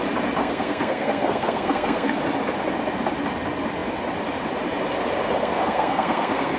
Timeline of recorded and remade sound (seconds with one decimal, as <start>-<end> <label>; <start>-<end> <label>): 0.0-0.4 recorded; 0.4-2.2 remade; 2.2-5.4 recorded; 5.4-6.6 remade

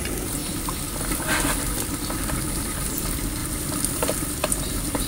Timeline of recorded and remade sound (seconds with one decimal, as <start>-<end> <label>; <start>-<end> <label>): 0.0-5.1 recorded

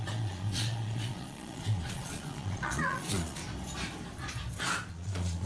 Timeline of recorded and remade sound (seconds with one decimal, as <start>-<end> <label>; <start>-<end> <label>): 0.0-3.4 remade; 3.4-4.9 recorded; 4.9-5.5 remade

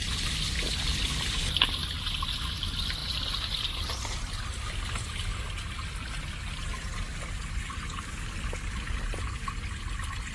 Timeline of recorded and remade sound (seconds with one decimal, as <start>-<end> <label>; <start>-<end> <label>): 0.0-0.9 recorded; 0.9-1.4 remade; 1.4-3.0 recorded; 3.0-5.4 remade; 5.4-10.3 recorded

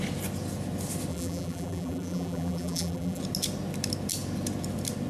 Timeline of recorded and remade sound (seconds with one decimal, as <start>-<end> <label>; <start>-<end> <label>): 0.0-1.1 recorded; 1.1-3.2 remade; 3.2-5.1 recorded

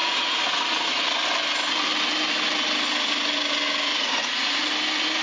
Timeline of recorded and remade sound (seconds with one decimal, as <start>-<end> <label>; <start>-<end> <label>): 0.0-3.9 recorded; 3.9-4.7 remade; 4.7-5.2 recorded